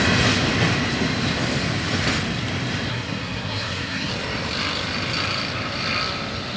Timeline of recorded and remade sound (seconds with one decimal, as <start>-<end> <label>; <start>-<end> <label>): 0.0-2.9 recorded; 2.9-4.1 remade; 4.1-6.6 recorded